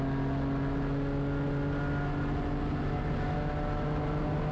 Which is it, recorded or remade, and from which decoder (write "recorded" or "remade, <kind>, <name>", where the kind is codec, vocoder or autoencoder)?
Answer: recorded